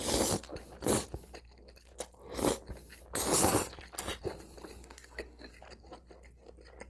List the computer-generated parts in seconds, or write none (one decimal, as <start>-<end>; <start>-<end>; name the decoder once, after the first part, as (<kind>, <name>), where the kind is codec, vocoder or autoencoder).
4.8-5.5 (codec, SNAC)